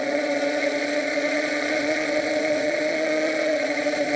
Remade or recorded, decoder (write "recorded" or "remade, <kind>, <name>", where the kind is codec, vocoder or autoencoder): remade, vocoder, Vocos